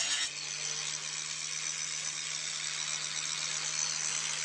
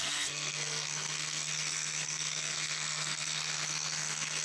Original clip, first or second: first